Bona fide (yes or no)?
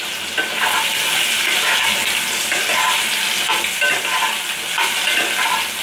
yes